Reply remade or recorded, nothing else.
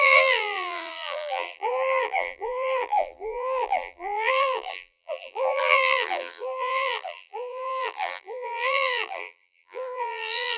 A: remade